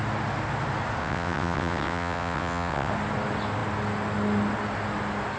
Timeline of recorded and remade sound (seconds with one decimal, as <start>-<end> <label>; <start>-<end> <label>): 0.0-1.0 recorded; 1.0-2.9 remade; 2.9-5.4 recorded